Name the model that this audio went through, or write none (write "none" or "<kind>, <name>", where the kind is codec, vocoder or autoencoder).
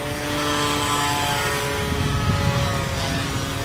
none